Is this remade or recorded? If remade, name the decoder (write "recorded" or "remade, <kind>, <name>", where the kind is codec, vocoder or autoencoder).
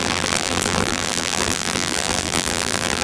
remade, vocoder, BigVGAN v2